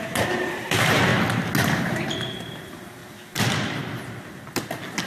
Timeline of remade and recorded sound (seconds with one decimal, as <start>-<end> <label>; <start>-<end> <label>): 0.0-1.1 remade; 1.1-1.8 recorded; 1.8-3.0 remade; 3.0-5.1 recorded